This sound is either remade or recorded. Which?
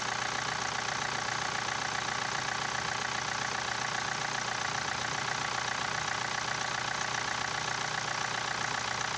recorded